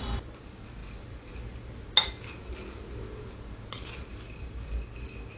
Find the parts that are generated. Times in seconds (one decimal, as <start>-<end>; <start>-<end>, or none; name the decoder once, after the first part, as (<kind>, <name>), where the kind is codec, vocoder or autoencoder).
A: none